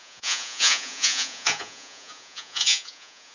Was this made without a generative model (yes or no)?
no